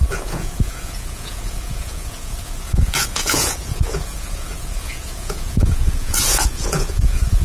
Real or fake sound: fake